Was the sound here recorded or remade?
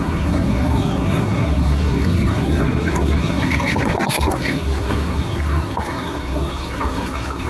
remade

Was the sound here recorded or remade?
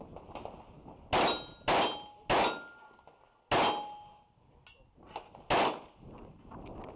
recorded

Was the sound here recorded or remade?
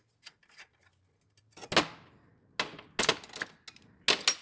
recorded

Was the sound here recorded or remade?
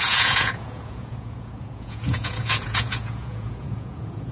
remade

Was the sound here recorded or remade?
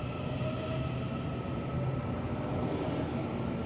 recorded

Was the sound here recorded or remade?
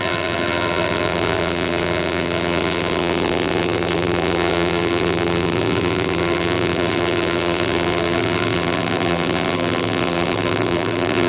remade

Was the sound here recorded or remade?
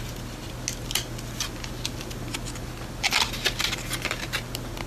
recorded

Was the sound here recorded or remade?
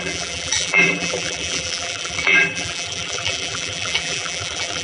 remade